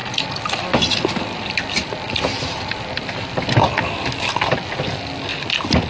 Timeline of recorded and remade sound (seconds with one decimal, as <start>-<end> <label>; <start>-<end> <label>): 0.0-3.5 remade; 3.5-5.9 recorded